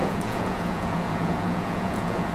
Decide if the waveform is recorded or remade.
remade